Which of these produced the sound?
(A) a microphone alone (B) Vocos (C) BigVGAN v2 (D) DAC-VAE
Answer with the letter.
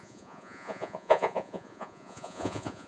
B